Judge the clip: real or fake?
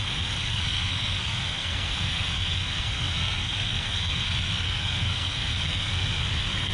fake